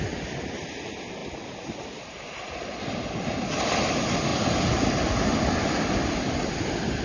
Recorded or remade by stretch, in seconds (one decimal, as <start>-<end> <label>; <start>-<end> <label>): 0.0-7.0 recorded